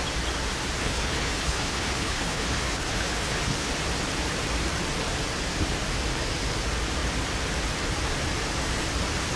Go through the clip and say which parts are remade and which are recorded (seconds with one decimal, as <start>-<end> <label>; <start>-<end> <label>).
0.0-0.8 recorded; 0.8-3.7 remade; 3.7-9.4 recorded